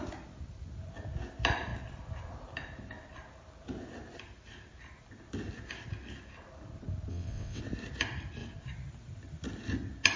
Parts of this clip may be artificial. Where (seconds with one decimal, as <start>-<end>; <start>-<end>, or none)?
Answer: 7.1-7.6